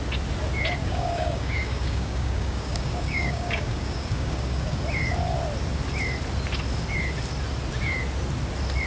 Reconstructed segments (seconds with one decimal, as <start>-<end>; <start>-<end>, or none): 0.8-4.8